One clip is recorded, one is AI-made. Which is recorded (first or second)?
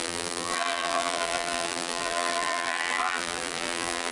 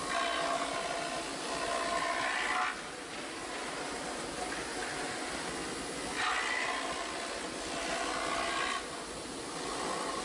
second